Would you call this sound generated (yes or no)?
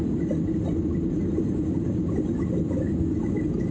no